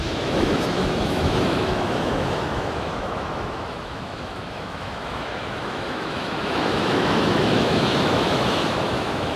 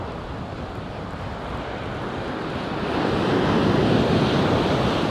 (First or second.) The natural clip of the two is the second